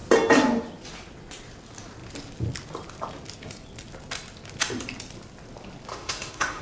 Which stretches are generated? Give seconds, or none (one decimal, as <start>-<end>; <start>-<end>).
5.9-6.6